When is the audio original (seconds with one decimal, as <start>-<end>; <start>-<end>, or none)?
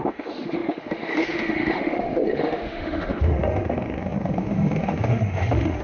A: none